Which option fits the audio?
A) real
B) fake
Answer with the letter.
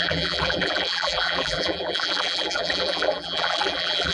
B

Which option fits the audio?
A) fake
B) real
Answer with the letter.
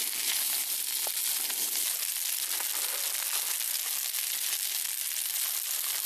B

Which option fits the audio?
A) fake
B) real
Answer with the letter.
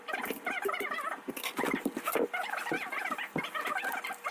B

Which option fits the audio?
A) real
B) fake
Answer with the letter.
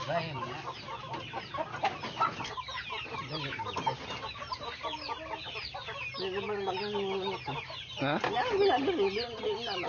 A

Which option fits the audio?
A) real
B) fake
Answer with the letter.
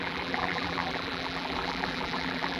B